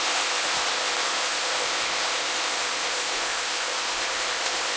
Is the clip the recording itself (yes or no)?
no